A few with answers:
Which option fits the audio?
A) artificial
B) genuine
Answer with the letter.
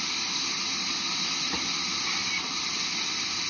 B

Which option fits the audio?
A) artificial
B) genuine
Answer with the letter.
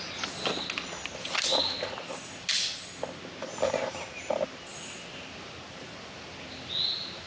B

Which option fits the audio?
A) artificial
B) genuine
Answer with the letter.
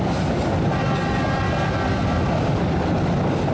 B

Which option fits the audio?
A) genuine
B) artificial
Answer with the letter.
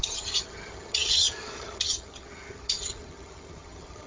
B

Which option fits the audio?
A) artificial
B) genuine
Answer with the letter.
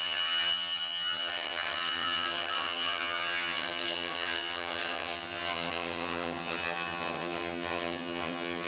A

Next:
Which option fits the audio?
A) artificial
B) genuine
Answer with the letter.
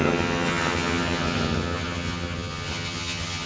A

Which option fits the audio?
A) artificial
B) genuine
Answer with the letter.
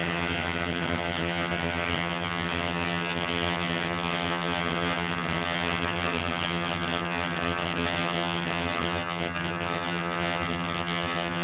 A